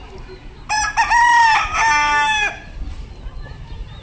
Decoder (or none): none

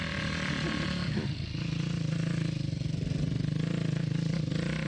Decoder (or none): none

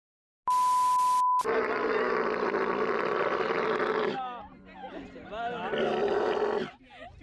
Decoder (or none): none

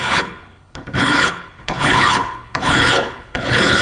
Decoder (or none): codec, HILCodec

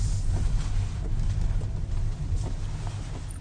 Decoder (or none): none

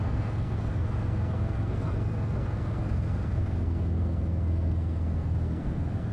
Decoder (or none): codec, SNAC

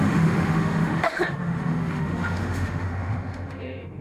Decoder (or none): autoencoder, DAC-VAE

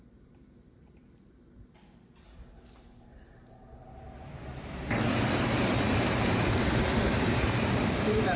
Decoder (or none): vocoder, BigVGAN v2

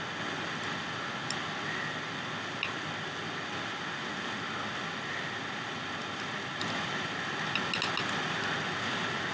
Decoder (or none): none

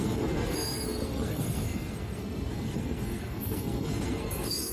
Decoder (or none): codec, SNAC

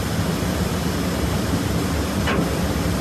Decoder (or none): none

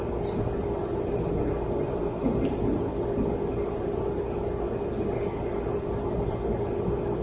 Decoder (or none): none